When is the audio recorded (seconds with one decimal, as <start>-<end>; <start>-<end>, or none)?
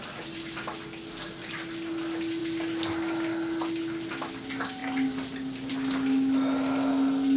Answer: 0.0-7.4